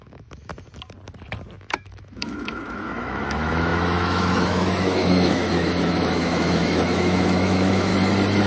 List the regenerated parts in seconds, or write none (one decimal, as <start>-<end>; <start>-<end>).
0.0-0.5; 1.6-7.9